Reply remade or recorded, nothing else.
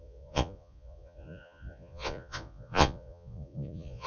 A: remade